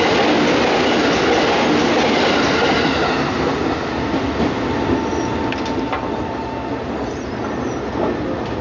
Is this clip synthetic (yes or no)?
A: no